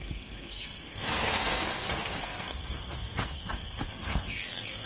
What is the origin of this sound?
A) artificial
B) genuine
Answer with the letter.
A